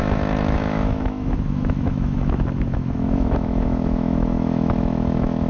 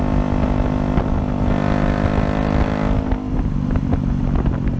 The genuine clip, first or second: second